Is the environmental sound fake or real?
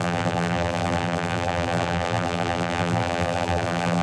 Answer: fake